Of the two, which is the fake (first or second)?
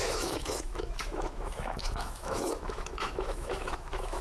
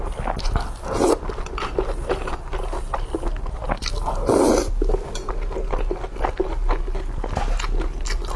first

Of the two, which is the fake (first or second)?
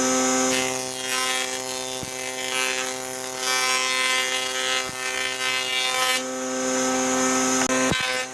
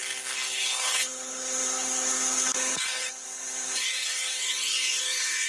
second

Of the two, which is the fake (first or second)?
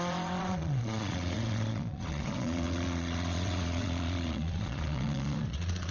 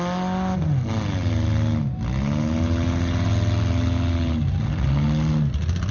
first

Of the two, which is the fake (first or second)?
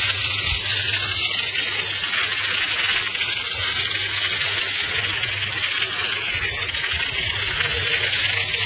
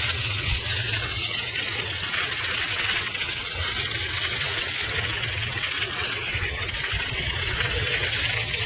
second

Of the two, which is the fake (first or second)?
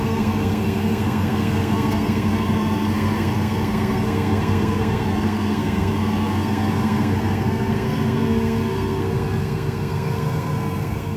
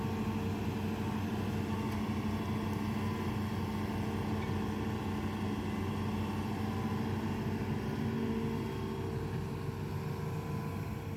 first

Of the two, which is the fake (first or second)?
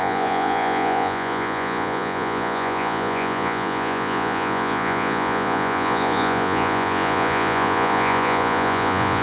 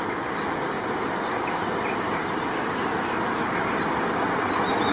first